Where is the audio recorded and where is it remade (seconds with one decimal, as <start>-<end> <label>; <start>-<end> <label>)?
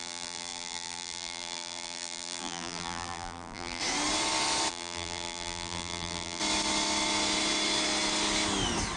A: 0.0-3.8 remade; 3.8-4.7 recorded; 4.7-6.4 remade; 6.4-9.0 recorded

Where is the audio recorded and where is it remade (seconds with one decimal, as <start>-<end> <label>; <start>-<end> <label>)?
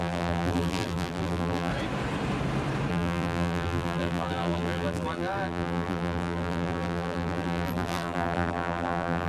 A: 0.0-1.7 remade; 1.7-2.9 recorded; 2.9-9.3 remade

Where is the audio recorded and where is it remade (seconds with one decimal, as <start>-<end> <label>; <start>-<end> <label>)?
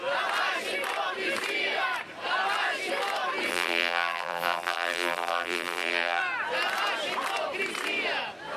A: 0.0-3.5 recorded; 3.5-6.2 remade; 6.2-8.6 recorded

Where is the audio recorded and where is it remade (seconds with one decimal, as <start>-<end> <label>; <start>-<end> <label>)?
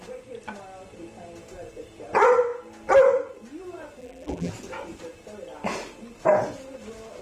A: 0.0-4.0 recorded; 4.0-4.5 remade; 4.5-7.2 recorded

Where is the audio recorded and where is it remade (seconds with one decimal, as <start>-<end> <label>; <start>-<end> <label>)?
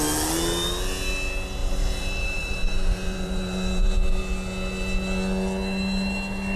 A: 0.0-1.6 recorded; 1.6-4.2 remade; 4.2-6.6 recorded